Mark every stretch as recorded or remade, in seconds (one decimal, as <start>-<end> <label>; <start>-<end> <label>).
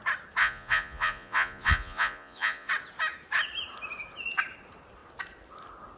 0.0-0.4 recorded; 0.4-2.7 remade; 2.7-6.0 recorded